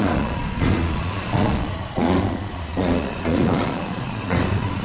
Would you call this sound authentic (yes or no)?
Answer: no